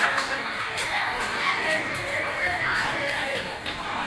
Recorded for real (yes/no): no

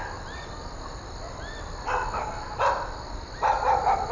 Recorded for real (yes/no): yes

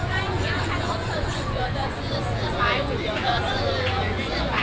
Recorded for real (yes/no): no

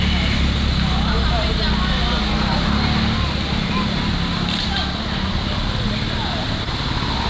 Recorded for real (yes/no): yes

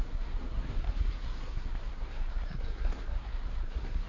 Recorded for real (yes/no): no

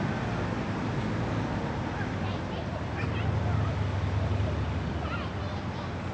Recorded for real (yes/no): yes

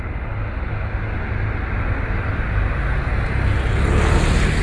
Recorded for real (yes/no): yes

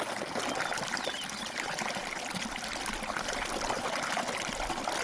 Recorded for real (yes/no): yes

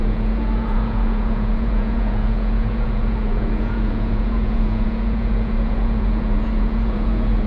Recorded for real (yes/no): no